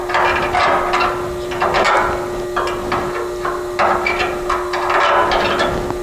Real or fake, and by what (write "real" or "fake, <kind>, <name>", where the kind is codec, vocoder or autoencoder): real